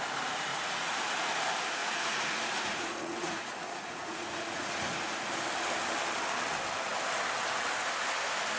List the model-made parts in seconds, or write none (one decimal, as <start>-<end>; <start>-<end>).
0.5-1.3; 1.8-5.3